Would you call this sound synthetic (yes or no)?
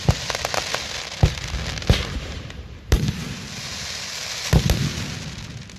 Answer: no